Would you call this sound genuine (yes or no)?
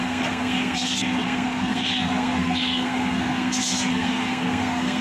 no